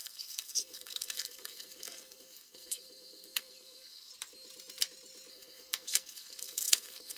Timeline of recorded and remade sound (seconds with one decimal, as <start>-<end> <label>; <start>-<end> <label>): 0.0-4.1 remade; 4.1-5.3 recorded; 5.3-7.2 remade